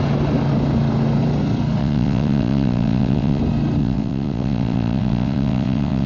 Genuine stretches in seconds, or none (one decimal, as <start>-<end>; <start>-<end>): 0.0-1.8; 3.4-3.8